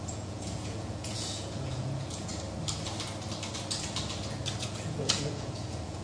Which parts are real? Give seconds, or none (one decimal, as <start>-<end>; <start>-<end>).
2.3-4.6